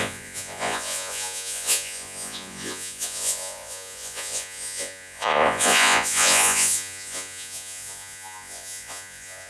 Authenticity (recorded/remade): remade